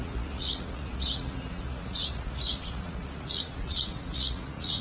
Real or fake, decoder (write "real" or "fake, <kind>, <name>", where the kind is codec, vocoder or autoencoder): fake, vocoder, Vocos